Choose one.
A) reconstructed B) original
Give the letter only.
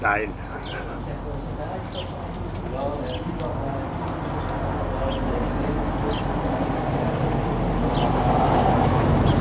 B